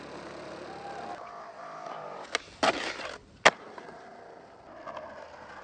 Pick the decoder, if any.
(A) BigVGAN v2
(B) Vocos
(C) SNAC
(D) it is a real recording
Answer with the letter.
D